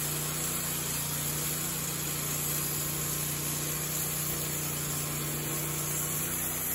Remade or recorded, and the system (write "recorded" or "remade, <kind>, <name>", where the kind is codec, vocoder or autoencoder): recorded